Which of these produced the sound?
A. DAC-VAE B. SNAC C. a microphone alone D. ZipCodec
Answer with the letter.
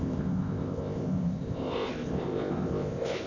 D